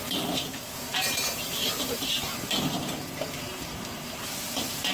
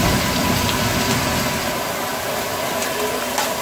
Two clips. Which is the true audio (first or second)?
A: second